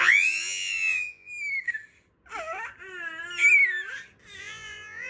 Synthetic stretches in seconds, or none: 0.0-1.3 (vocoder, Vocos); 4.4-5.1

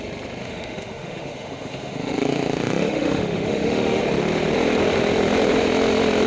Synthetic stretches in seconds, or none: 0.4-4.0 (autoencoder, DAC-VAE)

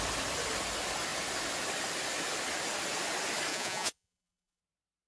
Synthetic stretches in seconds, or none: 3.5-4.6 (vocoder, Vocos)

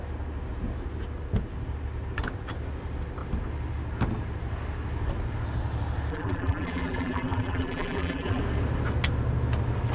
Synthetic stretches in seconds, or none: 6.1-8.4 (vocoder, BigVGAN v2)

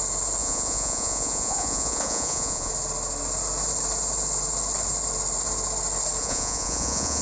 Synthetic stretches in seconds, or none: 0.4-2.7 (vocoder, Vocos); 6.2-7.2

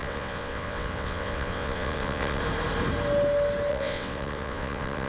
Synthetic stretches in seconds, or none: 0.0-2.4 (vocoder, WaveNeXt); 3.7-5.1

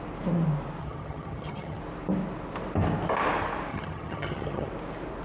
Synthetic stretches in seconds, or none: 0.8-1.8 (vocoder, HiFi-GAN); 3.7-4.7